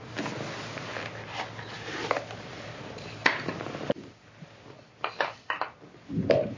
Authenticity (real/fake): real